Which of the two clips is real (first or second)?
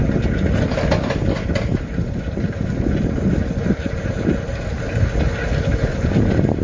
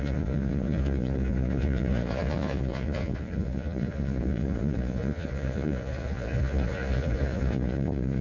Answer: first